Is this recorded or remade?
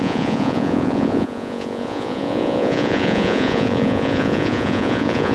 remade